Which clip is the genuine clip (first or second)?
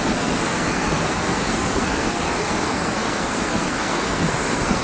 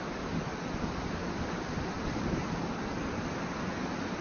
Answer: second